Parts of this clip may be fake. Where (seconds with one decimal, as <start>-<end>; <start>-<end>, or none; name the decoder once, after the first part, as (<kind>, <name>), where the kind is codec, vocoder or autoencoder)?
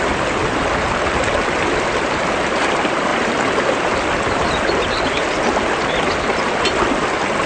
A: none